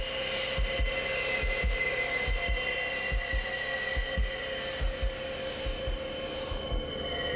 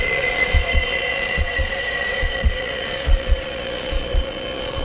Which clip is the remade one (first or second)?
second